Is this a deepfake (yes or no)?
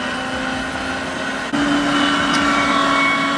no